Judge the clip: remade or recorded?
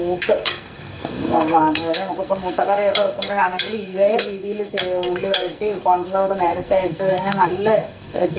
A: remade